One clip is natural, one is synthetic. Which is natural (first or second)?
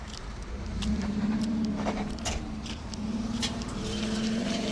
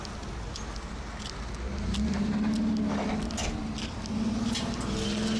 second